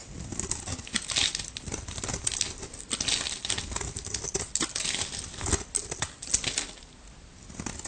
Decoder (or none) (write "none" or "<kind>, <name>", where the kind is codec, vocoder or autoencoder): none